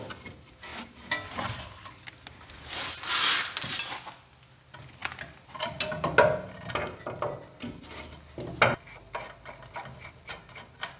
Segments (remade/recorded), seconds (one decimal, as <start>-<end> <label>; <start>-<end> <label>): 0.0-11.0 recorded